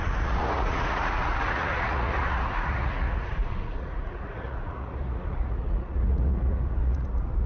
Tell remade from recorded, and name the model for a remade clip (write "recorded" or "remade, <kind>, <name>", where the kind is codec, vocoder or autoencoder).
remade, vocoder, Vocos